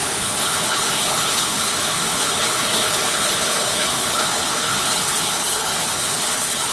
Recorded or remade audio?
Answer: remade